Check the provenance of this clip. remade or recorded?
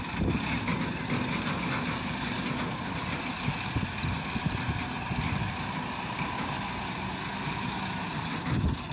recorded